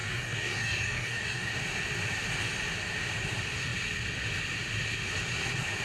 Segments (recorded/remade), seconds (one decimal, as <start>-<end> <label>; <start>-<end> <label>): 0.0-1.5 remade; 1.5-5.8 recorded